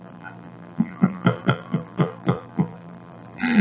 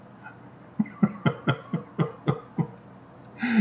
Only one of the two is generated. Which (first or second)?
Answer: first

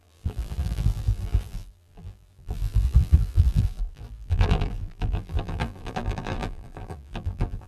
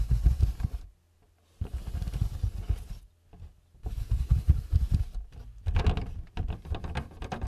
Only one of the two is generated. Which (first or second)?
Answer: first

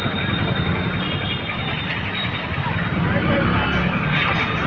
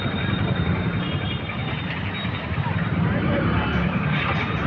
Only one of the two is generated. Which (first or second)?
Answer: second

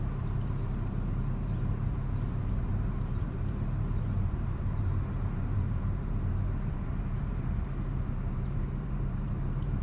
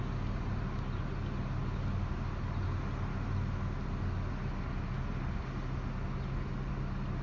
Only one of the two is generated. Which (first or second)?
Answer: first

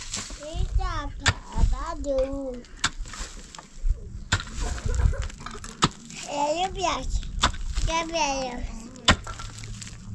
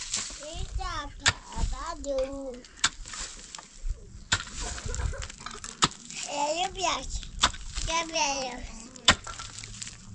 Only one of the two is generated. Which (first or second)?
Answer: second